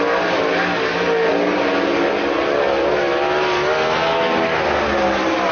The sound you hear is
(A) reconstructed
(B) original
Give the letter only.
B